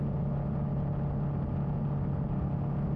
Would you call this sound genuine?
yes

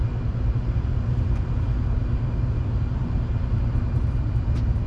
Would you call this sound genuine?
yes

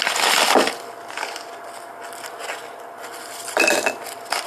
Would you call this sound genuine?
yes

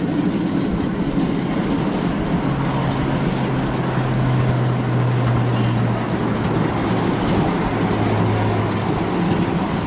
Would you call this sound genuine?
yes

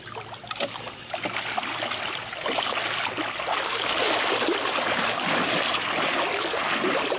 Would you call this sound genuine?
yes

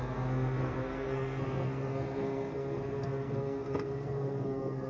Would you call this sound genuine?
no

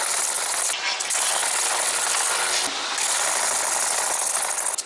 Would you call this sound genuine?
yes